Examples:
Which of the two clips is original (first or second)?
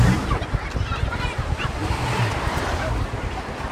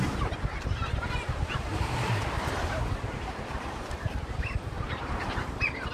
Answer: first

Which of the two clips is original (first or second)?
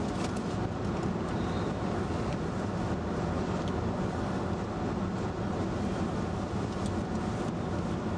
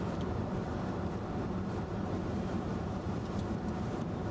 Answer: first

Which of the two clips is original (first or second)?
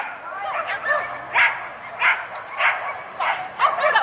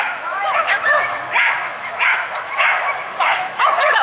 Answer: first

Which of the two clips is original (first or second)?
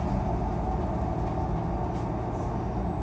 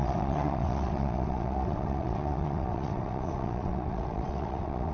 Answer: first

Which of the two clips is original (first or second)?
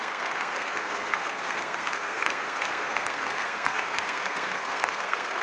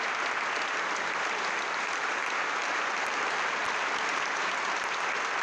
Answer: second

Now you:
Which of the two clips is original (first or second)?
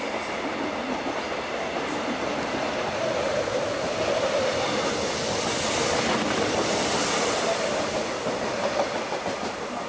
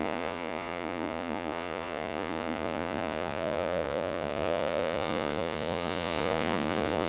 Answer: first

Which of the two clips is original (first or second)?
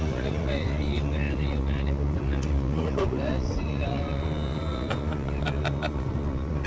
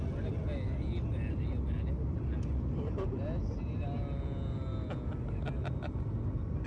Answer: second